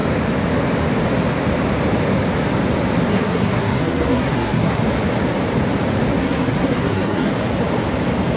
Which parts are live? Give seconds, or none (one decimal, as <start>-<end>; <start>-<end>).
0.0-3.1; 4.8-6.1; 7.3-8.4